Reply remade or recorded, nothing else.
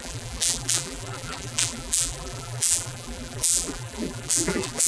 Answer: remade